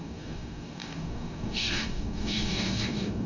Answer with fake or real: fake